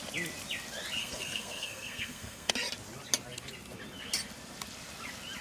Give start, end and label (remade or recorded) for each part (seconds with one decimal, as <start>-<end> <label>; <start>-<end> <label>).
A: 0.0-1.0 recorded; 1.0-2.5 remade; 2.5-5.4 recorded